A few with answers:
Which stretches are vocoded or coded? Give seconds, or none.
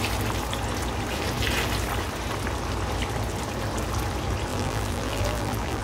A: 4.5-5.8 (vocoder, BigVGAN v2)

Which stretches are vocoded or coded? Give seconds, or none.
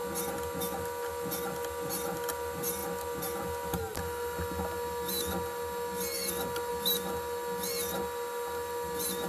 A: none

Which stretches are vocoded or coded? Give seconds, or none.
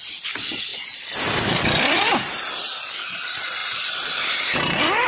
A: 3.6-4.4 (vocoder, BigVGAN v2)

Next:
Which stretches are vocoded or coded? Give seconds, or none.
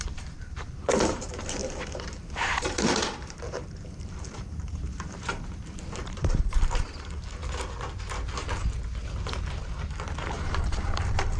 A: 0.0-7.4 (vocoder, BigVGAN v2); 10.3-11.4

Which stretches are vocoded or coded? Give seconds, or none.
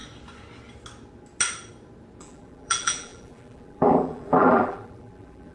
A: 2.2-5.5 (vocoder, BigVGAN v2)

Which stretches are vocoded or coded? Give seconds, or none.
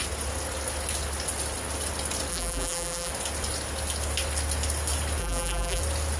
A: 2.3-3.1 (vocoder, BigVGAN v2); 5.2-5.8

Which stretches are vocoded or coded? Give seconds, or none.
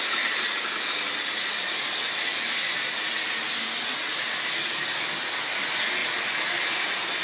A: none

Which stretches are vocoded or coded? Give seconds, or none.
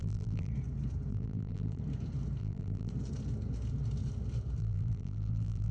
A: 0.0-0.5 (vocoder, BigVGAN v2); 1.1-1.8; 2.4-2.9; 4.6-5.7